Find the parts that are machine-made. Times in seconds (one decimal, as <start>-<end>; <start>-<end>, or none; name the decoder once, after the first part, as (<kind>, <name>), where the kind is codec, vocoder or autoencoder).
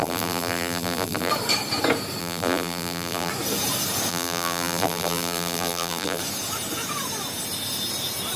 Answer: 0.0-1.3 (vocoder, BigVGAN v2); 2.2-3.3; 4.1-6.2